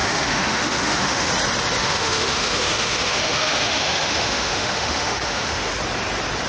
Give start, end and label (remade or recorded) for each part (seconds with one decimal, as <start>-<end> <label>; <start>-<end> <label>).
0.0-1.3 remade; 1.3-1.8 recorded; 1.8-5.7 remade; 5.7-6.5 recorded